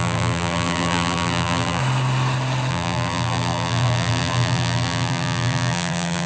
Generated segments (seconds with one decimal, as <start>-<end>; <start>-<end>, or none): 0.0-1.8; 2.7-6.3